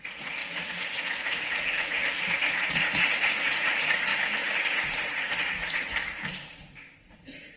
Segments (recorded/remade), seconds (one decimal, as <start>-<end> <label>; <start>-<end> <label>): 0.0-4.1 remade; 4.1-5.0 recorded; 5.0-5.9 remade; 5.9-6.5 recorded; 6.5-7.6 remade